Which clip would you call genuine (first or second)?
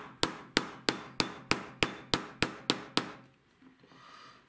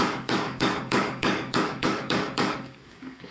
first